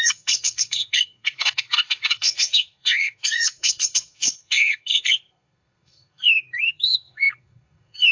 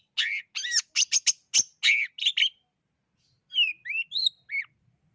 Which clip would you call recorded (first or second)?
second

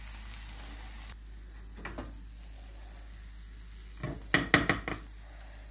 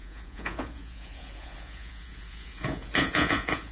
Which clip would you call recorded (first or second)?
first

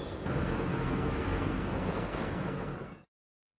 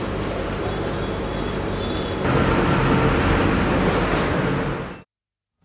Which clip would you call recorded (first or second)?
second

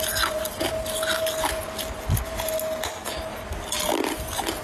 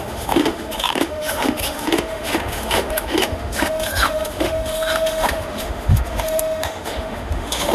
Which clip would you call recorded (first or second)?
first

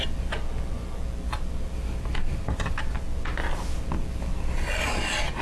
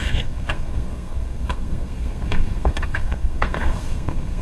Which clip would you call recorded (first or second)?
first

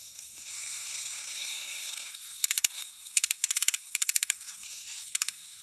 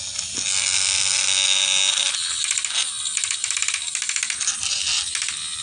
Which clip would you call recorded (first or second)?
second